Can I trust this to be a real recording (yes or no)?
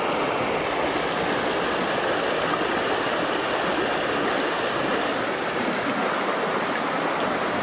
yes